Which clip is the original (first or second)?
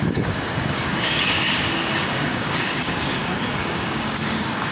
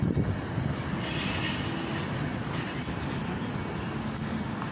second